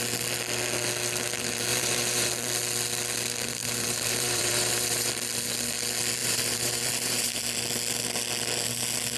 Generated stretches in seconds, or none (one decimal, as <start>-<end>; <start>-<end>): 1.7-2.3; 3.6-5.1; 6.2-7.4